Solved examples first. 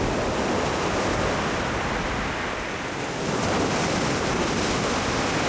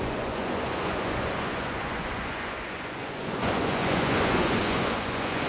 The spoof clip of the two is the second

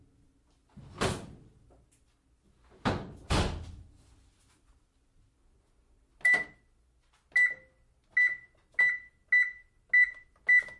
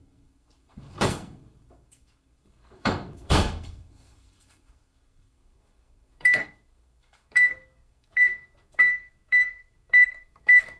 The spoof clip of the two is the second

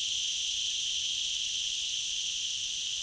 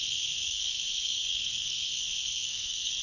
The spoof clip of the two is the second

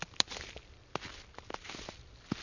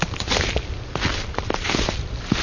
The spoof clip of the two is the second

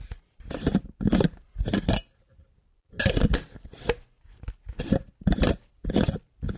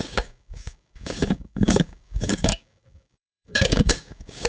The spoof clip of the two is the second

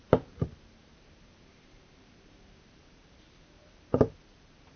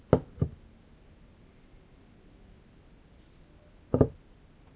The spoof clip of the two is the first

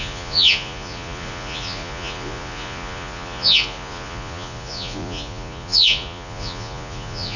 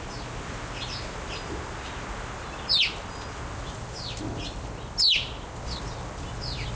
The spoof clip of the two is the first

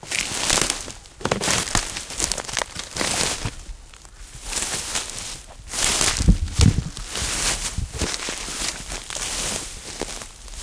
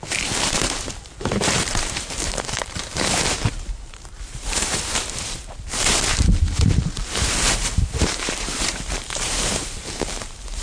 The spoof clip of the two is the second